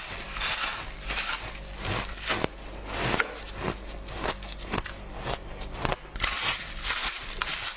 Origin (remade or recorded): recorded